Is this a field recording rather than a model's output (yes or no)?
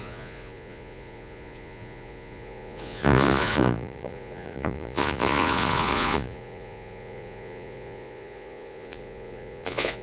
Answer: no